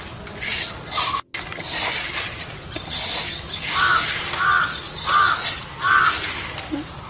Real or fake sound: real